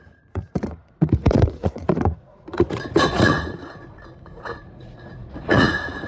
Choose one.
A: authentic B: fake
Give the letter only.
B